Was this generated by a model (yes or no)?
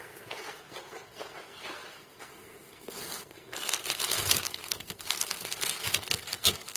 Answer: yes